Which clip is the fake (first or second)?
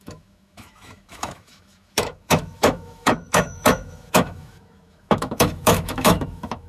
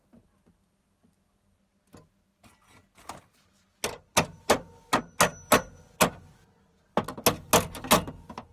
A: first